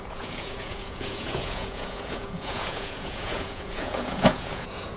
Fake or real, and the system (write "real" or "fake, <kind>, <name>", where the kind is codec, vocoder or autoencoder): fake, vocoder, Vocos